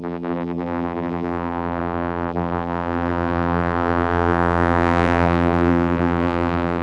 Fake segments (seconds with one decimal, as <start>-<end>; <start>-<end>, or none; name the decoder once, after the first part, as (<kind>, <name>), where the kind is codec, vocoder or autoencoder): 0.0-6.8 (vocoder, BigVGAN v2)